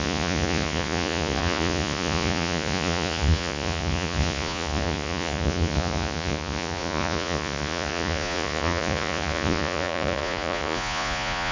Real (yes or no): no